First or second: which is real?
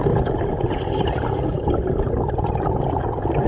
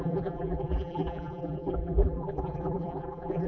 first